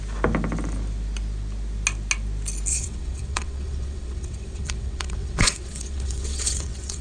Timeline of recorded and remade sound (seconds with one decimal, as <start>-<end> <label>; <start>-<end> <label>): 0.0-2.7 recorded; 2.7-7.0 remade

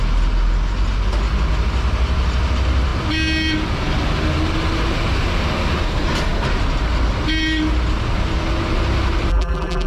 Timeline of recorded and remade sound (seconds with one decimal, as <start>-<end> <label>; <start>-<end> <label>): 0.0-9.3 recorded; 9.3-9.9 remade

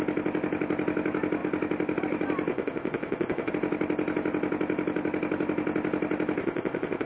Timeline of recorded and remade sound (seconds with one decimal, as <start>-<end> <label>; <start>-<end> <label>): 0.0-2.5 recorded; 2.5-3.5 remade; 3.5-6.4 recorded; 6.4-7.1 remade

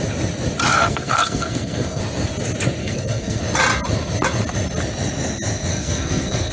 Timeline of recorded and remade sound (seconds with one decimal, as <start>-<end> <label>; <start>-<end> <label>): 0.0-0.7 recorded; 0.7-2.0 remade; 2.0-2.8 recorded; 2.8-3.4 remade; 3.4-5.7 recorded; 5.7-6.5 remade

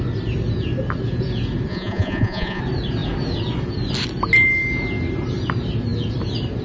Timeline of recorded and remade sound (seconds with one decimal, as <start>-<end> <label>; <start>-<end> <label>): 0.0-1.7 recorded; 1.7-2.6 remade; 2.6-6.6 recorded

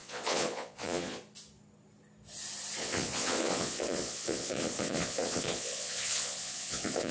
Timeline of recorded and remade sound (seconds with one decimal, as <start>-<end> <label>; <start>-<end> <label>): 0.0-1.2 remade; 1.2-2.8 recorded; 2.8-7.1 remade

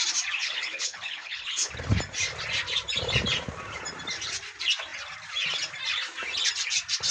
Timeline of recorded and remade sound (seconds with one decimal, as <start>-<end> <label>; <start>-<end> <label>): 0.0-0.4 recorded; 0.4-1.7 remade; 1.7-7.1 recorded